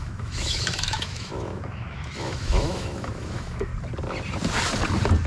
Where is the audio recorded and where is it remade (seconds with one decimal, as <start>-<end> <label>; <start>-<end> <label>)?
0.0-3.7 remade; 3.7-5.3 recorded